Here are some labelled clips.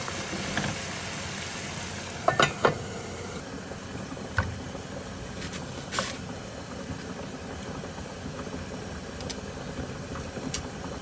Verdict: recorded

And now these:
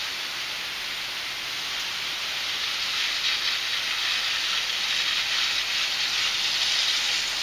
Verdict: recorded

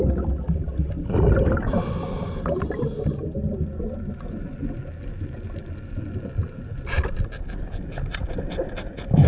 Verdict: recorded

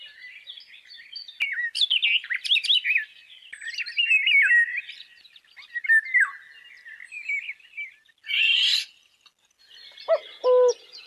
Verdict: recorded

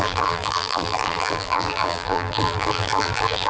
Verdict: remade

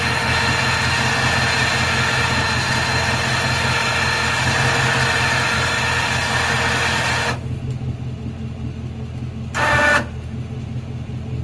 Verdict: recorded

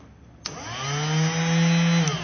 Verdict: recorded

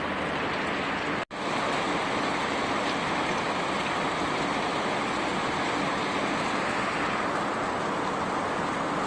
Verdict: recorded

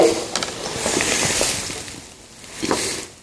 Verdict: recorded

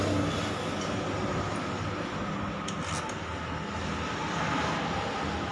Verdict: recorded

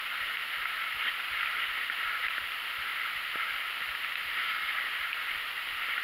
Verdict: recorded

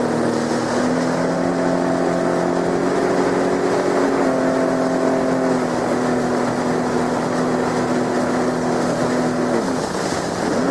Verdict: recorded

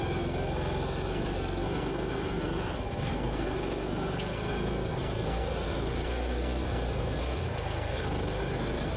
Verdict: remade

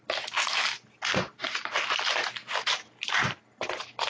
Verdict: recorded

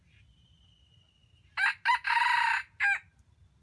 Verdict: recorded